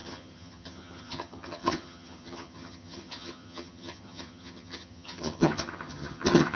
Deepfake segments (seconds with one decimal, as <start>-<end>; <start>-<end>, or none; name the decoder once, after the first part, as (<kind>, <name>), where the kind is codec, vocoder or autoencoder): 0.0-6.6 (vocoder, HiFi-GAN)